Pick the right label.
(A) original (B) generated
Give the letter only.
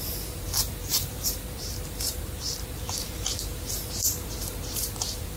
B